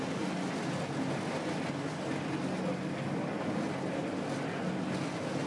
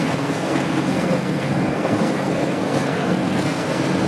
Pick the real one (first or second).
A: first